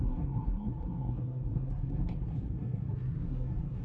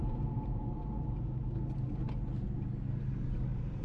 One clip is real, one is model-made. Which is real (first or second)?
second